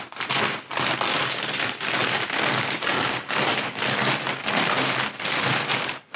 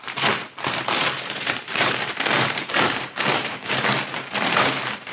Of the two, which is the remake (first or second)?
second